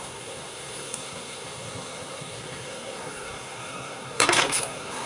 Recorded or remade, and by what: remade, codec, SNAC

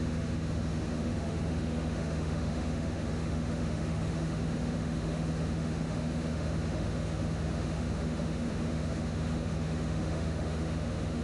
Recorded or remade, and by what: remade, autoencoder, DAC-VAE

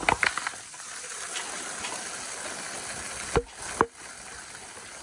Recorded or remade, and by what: recorded